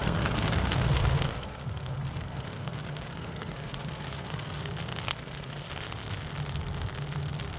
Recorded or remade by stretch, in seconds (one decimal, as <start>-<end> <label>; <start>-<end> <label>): 0.0-4.6 remade; 4.6-5.1 recorded; 5.1-5.7 remade; 5.7-7.6 recorded